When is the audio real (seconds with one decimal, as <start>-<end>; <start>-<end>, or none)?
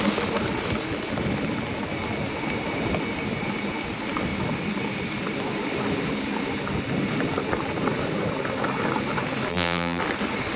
0.0-9.5; 10.0-10.6